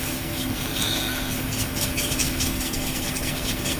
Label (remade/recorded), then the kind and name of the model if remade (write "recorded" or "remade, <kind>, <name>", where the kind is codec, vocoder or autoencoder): remade, codec, SNAC